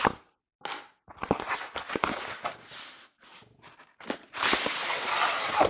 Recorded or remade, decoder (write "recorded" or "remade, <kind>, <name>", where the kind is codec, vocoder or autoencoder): recorded